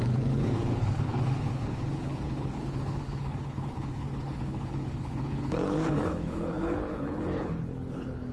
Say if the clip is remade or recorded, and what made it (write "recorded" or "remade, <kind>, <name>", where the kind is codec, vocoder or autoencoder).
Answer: remade, codec, HILCodec